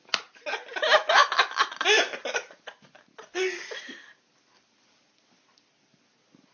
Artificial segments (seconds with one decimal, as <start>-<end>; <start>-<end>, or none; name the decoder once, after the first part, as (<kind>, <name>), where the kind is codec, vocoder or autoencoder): none